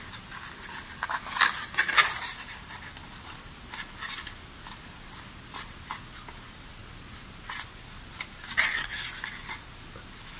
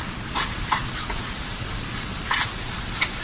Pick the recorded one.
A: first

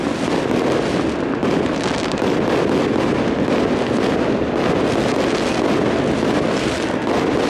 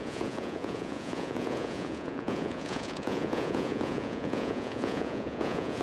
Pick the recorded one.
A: first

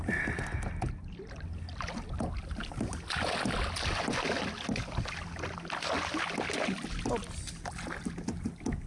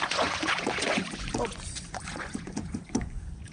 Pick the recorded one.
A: first